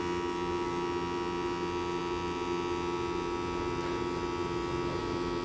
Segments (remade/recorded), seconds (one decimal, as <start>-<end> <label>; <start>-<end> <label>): 0.0-5.4 recorded